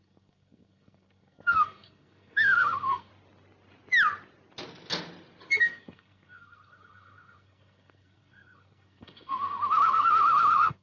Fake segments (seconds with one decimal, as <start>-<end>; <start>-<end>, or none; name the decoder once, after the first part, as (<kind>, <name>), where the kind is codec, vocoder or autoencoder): 0.0-3.1 (codec, SNAC); 5.5-10.8